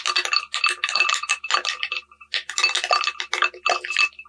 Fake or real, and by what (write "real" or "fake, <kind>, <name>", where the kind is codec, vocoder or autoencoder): real